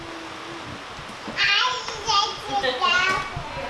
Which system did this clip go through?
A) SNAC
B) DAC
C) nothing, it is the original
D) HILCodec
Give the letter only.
C